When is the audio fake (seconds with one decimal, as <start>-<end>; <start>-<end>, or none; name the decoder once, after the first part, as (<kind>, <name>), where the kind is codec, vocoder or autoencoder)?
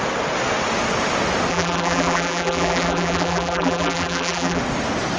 1.5-4.6 (vocoder, BigVGAN v2)